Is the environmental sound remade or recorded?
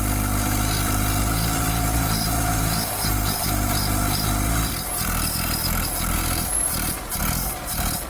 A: remade